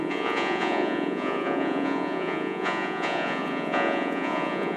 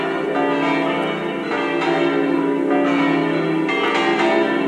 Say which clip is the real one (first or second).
second